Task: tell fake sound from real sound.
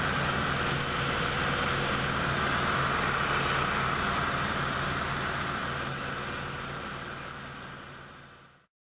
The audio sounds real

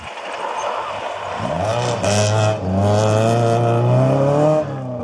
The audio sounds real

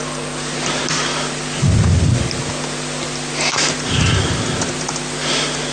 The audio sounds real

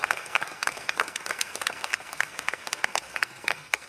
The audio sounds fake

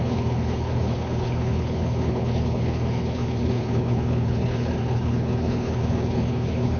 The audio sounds fake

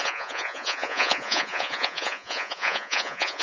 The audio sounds fake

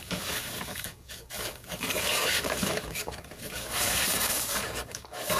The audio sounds fake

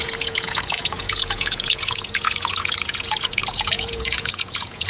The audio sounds fake